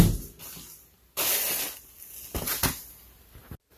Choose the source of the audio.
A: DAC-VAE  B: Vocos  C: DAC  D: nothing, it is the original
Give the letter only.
D